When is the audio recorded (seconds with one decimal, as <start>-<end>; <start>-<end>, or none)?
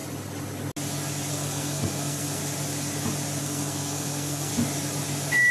0.0-1.3; 2.4-3.4; 4.5-5.5